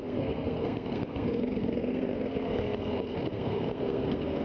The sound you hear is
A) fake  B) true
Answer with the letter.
A